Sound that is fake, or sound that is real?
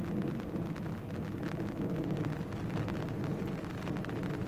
real